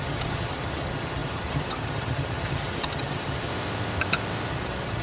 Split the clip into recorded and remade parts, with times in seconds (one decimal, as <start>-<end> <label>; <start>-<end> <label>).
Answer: 0.0-3.5 remade; 3.5-4.5 recorded; 4.5-5.0 remade

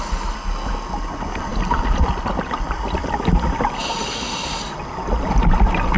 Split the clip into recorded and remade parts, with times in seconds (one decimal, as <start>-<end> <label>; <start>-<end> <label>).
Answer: 0.0-6.0 recorded